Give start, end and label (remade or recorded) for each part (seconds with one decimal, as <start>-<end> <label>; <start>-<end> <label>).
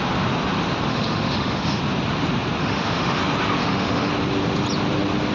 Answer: 0.0-0.9 recorded; 0.9-1.8 remade; 1.8-2.6 recorded; 2.6-3.2 remade; 3.2-3.6 recorded; 3.6-4.1 remade; 4.1-5.3 recorded